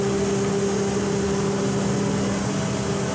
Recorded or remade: recorded